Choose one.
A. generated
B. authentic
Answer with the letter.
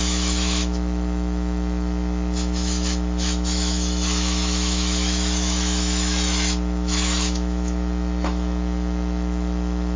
A